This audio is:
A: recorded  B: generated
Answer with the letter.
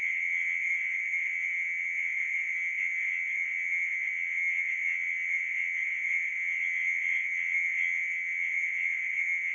B